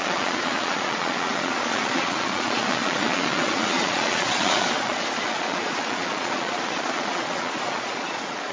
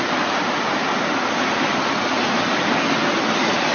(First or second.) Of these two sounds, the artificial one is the first